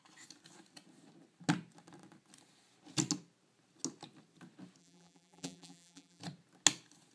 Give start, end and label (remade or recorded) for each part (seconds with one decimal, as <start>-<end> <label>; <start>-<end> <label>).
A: 0.0-4.8 recorded; 4.8-6.2 remade; 6.2-7.1 recorded